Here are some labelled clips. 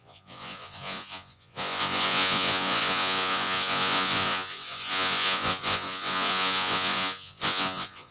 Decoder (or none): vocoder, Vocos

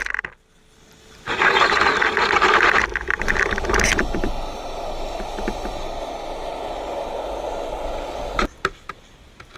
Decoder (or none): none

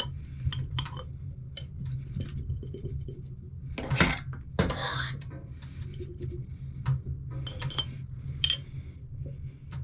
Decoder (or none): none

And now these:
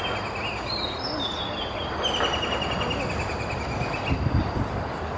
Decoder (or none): none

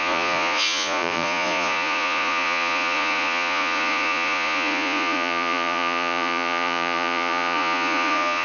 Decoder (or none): vocoder, Vocos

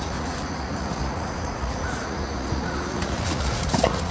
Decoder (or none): vocoder, Vocos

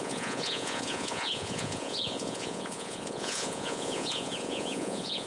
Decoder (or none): vocoder, Vocos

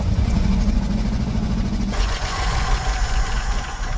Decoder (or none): vocoder, Vocos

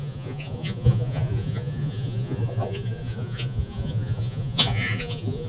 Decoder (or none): vocoder, Vocos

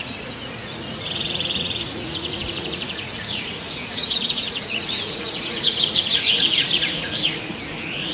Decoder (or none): vocoder, Vocos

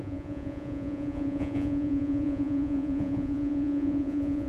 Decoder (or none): vocoder, Vocos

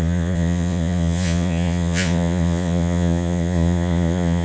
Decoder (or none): vocoder, Vocos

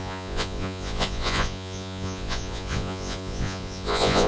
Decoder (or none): vocoder, Vocos